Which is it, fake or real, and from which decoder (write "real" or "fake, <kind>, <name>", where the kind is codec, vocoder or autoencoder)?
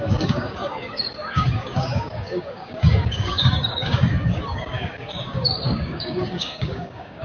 fake, codec, DAC